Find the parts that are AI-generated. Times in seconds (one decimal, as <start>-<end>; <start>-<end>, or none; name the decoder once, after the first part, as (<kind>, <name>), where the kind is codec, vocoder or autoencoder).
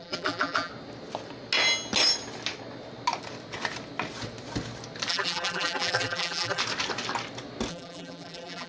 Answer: 0.0-0.7 (vocoder, BigVGAN v2); 5.1-6.6; 7.7-8.7